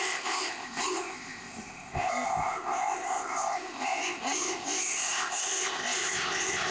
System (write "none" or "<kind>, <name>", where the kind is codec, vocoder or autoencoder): codec, ZipCodec